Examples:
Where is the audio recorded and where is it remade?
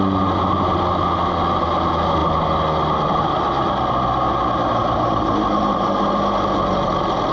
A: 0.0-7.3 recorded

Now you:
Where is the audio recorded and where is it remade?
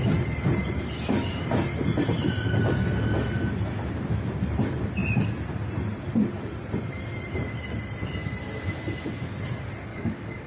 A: 0.0-9.9 recorded; 9.9-10.5 remade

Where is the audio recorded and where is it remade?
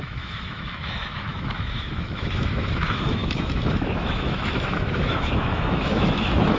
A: 0.0-6.6 remade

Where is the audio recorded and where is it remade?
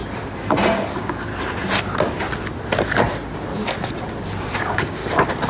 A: 0.0-0.9 recorded; 0.9-1.3 remade; 1.3-4.6 recorded; 4.6-5.0 remade; 5.0-5.5 recorded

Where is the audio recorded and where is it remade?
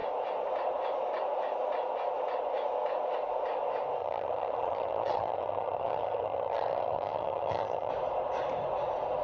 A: 0.0-4.0 recorded; 4.0-7.9 remade; 7.9-9.2 recorded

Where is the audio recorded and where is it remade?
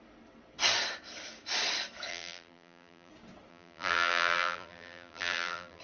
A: 0.0-2.1 recorded; 2.1-3.1 remade; 3.1-3.5 recorded; 3.5-5.8 remade